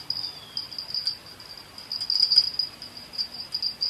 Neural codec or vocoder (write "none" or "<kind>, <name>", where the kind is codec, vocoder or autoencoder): none